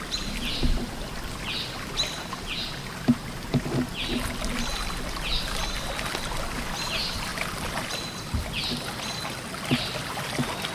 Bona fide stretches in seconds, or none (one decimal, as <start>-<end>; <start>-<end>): 0.0-10.7